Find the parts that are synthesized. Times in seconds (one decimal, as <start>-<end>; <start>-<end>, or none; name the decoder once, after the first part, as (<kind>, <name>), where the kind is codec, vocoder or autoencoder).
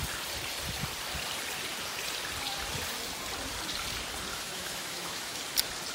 4.3-5.4 (autoencoder, DAC-VAE)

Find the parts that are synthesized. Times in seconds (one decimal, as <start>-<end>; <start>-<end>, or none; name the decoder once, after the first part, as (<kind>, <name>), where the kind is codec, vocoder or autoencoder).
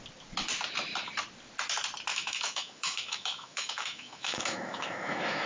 2.1-5.5 (autoencoder, DAC-VAE)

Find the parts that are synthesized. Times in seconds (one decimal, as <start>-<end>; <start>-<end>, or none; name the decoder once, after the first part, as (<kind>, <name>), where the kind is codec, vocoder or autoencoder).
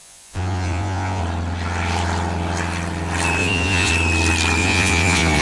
0.0-1.2 (vocoder, Vocos); 3.4-3.9; 4.6-5.4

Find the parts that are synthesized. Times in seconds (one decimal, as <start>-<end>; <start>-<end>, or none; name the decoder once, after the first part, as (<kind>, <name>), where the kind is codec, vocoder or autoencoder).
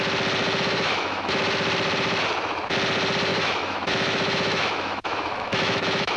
0.4-1.4 (autoencoder, DAC-VAE); 3.3-6.2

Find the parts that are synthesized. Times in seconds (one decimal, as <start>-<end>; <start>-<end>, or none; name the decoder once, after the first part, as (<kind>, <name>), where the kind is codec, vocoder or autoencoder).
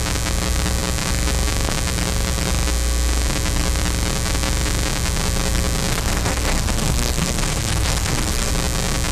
5.9-8.5 (codec, SNAC)